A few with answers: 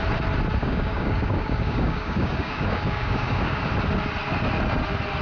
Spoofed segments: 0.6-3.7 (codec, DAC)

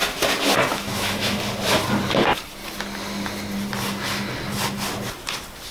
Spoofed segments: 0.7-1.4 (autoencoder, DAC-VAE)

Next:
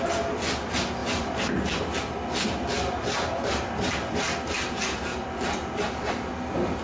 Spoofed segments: 1.0-1.5 (vocoder, BigVGAN v2); 5.1-6.1

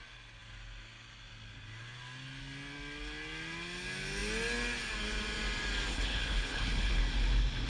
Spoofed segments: 5.9-7.0 (codec, HILCodec)

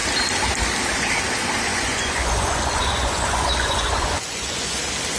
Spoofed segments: 1.7-4.8 (vocoder, Vocos)

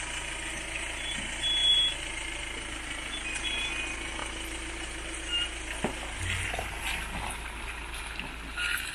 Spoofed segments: 1.6-2.4 (vocoder, BigVGAN v2)

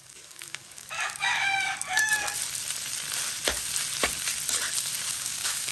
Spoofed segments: 0.0-2.1 (codec, DAC); 5.1-5.7

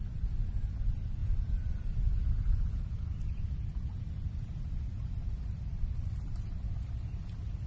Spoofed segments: 1.2-2.8 (vocoder, Vocos)